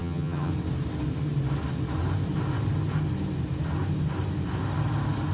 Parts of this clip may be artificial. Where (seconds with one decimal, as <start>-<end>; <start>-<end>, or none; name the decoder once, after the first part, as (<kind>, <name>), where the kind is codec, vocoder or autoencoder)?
0.0-0.5 (vocoder, HiFi-GAN)